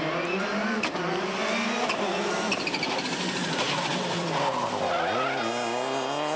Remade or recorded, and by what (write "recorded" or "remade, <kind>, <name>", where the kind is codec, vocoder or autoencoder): recorded